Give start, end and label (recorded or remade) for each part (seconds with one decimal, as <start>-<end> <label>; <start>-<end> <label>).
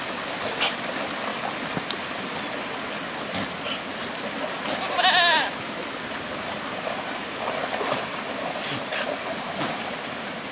0.0-10.5 recorded